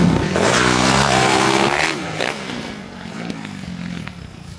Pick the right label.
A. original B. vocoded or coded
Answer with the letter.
B